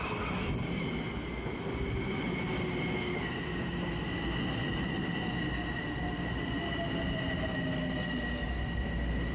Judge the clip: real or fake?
real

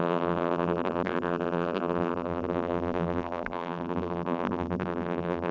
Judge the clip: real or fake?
fake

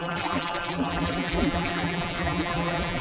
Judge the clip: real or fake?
fake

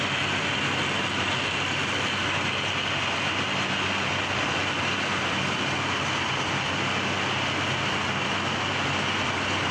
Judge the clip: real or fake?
real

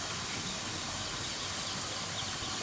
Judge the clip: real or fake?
real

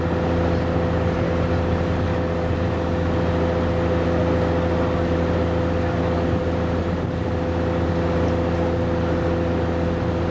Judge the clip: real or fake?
real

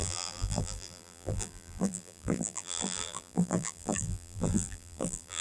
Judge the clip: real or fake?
fake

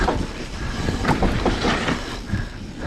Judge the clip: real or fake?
fake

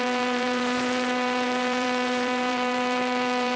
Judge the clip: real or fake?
fake